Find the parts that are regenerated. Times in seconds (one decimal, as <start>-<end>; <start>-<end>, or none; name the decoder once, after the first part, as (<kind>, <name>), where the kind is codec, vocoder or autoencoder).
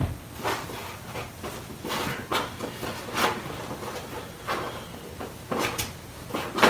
none